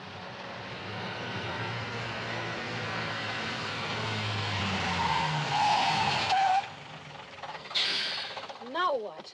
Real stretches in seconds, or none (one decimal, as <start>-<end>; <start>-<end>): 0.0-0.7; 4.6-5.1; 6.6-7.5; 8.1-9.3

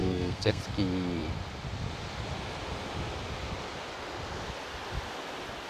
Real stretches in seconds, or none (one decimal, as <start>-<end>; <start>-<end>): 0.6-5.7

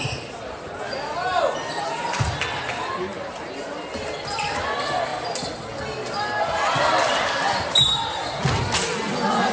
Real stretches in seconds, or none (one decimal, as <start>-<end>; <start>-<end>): 0.0-9.5

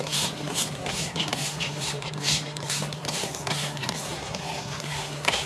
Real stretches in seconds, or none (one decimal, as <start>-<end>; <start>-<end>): none

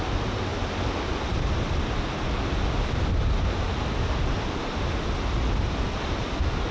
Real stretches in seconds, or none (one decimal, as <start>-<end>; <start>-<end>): 0.0-6.7